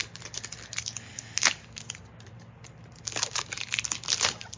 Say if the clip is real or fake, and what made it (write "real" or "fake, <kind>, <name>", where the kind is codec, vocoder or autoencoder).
real